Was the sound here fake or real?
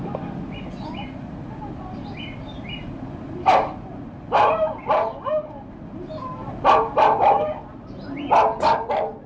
real